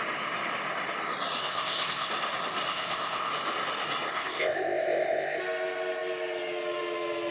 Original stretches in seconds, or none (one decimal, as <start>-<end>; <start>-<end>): 0.0-1.4; 2.1-2.7; 3.3-4.1; 5.4-7.3